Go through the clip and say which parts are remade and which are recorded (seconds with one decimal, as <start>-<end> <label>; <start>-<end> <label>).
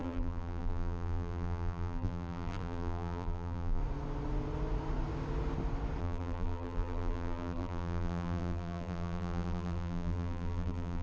0.0-3.8 remade; 3.8-6.0 recorded; 6.0-11.0 remade